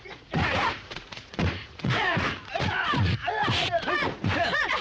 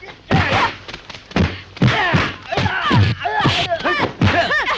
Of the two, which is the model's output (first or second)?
first